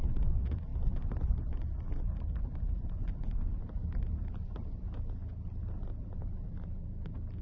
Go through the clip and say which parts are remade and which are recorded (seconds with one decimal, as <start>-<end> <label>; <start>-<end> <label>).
0.0-7.4 recorded